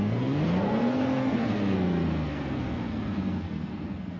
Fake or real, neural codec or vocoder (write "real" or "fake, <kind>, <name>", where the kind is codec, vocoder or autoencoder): fake, codec, SNAC